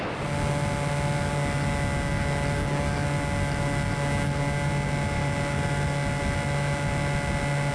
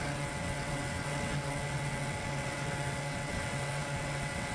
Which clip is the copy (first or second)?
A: second